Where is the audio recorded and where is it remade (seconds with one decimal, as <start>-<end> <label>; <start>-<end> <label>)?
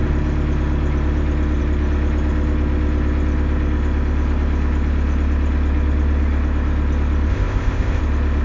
0.0-7.3 recorded; 7.3-8.0 remade; 8.0-8.4 recorded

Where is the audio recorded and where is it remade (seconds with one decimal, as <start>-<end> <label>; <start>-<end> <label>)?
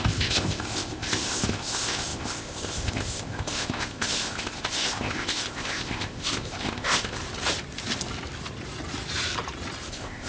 0.0-7.2 remade; 7.2-9.9 recorded; 9.9-10.3 remade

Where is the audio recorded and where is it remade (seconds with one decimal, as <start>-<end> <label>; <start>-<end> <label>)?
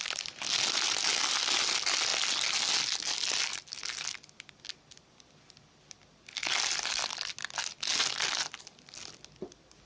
0.0-9.9 recorded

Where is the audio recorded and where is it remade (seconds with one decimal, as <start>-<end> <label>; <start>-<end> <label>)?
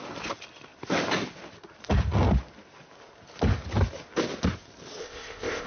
0.0-5.0 recorded; 5.0-5.7 remade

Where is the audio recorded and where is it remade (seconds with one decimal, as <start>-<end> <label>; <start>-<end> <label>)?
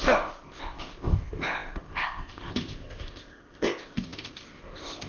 0.0-5.1 remade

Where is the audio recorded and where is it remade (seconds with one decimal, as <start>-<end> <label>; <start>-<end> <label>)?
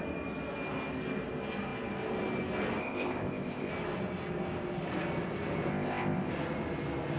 0.0-2.8 recorded; 2.8-3.7 remade; 3.7-5.7 recorded; 5.7-6.3 remade; 6.3-7.2 recorded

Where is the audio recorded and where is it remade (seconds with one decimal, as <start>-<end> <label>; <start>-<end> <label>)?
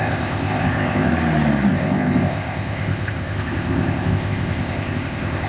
0.0-1.1 remade; 1.1-1.7 recorded; 1.7-5.5 remade